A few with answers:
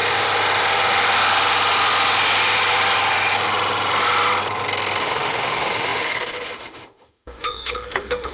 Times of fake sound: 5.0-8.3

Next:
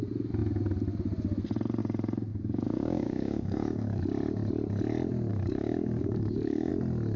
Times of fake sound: 2.3-4.0; 5.3-6.7

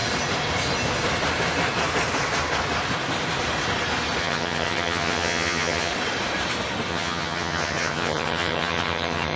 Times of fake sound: 4.2-5.9; 6.9-9.4

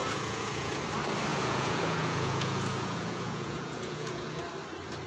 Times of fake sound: 0.0-0.8; 1.3-4.4

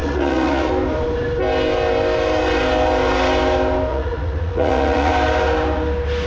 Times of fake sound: 0.0-0.7; 3.9-5.1

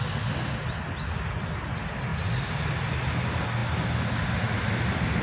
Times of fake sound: none

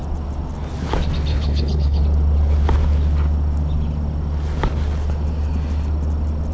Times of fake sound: 1.3-2.0